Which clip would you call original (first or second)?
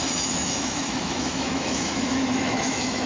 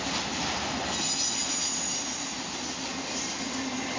second